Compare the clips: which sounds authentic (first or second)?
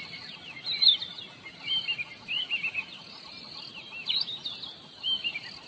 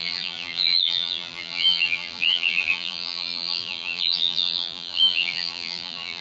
first